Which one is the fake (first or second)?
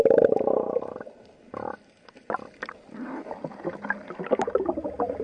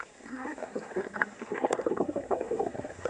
second